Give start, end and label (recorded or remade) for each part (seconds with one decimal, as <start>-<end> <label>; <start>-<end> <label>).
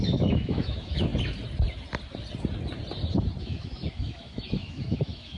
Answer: 0.0-1.1 remade; 1.1-3.4 recorded; 3.4-5.4 remade